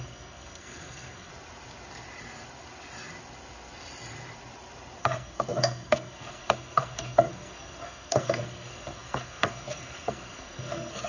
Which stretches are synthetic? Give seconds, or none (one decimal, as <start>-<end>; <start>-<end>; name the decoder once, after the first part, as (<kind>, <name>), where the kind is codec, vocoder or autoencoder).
0.0-1.3 (codec, SNAC); 5.0-11.1